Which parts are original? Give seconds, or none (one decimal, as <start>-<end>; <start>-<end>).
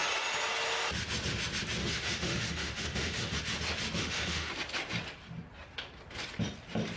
0.0-1.8; 3.4-4.0; 4.5-7.0